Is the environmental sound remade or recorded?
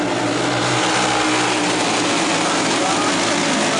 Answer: recorded